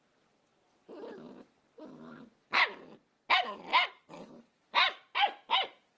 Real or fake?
real